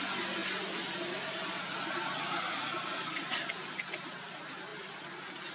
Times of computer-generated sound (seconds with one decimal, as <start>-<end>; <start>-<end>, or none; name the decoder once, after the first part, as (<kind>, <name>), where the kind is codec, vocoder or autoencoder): none

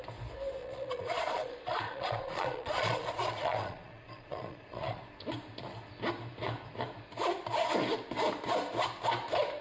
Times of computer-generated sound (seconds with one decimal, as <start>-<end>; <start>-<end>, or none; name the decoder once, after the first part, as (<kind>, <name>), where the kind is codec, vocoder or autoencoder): 0.6-5.0 (vocoder, Vocos)

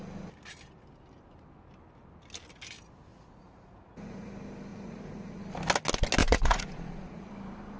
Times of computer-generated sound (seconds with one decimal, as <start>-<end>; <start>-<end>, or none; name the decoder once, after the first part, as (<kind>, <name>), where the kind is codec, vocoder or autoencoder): 3.1-4.3 (vocoder, Vocos); 4.7-5.4; 6.2-7.3

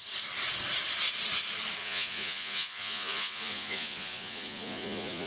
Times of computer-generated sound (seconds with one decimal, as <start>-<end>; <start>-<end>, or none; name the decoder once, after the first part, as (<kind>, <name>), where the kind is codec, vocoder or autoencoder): 1.8-5.3 (vocoder, Vocos)

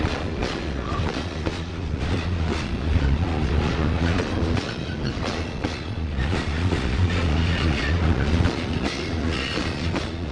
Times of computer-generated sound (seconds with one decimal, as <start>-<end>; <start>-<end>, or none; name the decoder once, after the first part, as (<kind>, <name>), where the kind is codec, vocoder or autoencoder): 0.0-10.3 (vocoder, Vocos)